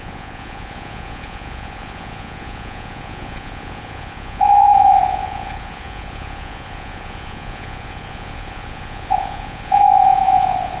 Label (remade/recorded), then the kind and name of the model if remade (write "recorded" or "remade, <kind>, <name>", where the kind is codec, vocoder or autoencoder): remade, vocoder, Vocos